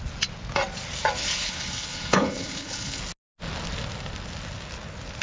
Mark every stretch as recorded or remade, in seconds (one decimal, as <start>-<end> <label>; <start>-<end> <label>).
0.0-1.2 recorded; 1.2-3.0 remade; 3.0-5.2 recorded